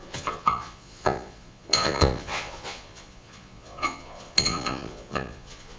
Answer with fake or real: fake